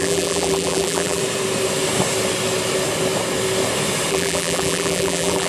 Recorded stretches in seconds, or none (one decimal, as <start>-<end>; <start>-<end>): 1.2-4.1